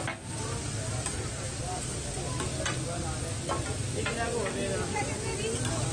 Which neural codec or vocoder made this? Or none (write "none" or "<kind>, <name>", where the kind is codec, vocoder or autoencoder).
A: none